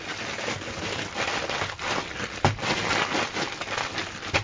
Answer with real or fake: real